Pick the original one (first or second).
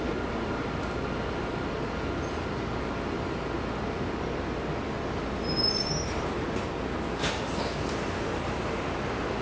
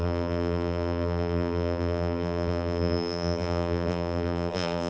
first